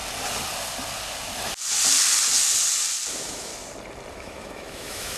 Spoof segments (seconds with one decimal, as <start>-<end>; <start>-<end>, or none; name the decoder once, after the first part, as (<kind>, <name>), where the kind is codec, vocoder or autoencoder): 3.1-3.5 (autoencoder, DAC-VAE); 4.1-5.2